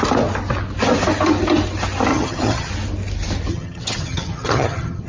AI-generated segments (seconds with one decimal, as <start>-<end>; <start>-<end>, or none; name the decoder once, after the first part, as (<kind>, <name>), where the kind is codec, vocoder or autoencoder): 2.1-2.7 (vocoder, HiFi-GAN); 3.5-5.1